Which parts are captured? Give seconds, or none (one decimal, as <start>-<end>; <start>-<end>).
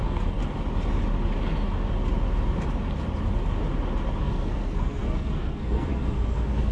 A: 0.4-4.2